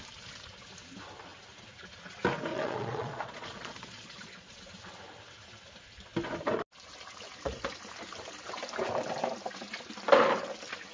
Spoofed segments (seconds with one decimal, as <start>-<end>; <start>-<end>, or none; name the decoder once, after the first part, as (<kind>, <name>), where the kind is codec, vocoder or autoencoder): 2.5-4.6 (vocoder, Vocos)